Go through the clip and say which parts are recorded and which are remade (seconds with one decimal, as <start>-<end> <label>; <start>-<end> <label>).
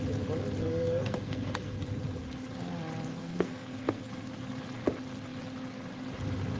0.0-0.6 recorded; 0.6-1.8 remade; 1.8-3.1 recorded; 3.1-4.1 remade; 4.1-6.6 recorded